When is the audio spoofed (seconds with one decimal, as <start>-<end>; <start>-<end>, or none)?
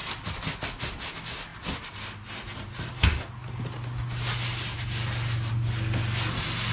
none